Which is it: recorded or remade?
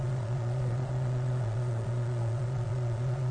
remade